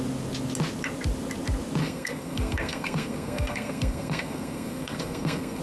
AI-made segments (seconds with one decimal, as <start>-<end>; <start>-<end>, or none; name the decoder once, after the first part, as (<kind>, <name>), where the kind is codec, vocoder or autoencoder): 1.8-5.6 (codec, SNAC)